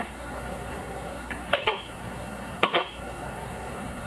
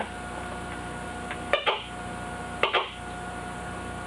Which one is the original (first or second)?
second